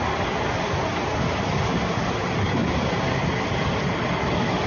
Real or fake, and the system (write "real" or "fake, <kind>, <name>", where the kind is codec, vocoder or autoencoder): real